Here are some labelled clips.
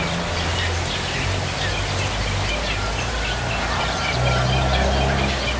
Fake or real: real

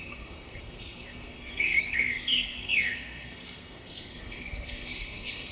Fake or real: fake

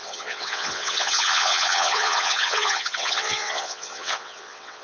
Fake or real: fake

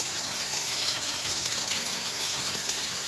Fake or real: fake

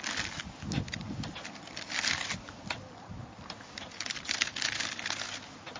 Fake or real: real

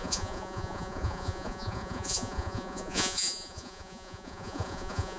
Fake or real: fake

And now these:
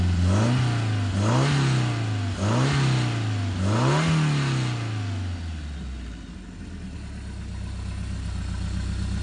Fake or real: real